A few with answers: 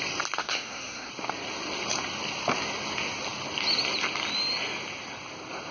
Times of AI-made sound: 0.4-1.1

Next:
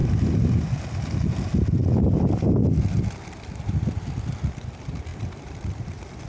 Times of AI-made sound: 2.0-6.3

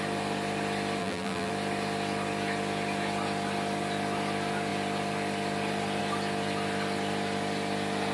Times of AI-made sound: 1.0-1.5